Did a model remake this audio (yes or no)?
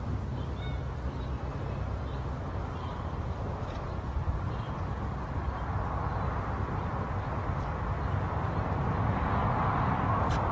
no